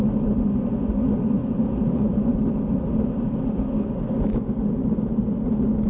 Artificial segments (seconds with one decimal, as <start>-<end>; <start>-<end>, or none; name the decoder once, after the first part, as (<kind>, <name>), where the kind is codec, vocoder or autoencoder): 0.0-1.4 (vocoder, Vocos); 1.9-2.3